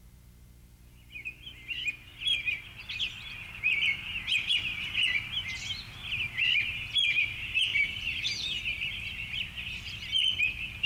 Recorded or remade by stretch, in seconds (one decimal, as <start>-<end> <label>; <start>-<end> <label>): 0.0-7.7 recorded; 7.7-8.6 remade; 8.6-10.9 recorded